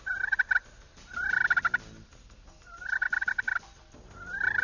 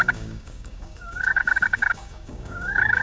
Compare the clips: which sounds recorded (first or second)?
first